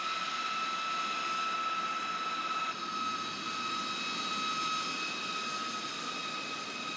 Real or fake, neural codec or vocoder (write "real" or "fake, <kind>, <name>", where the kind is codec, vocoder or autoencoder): real